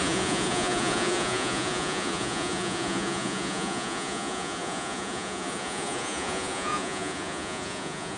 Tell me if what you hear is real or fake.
fake